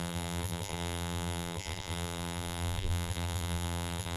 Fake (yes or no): yes